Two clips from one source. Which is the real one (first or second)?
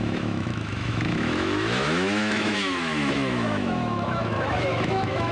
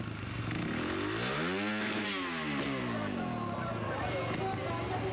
second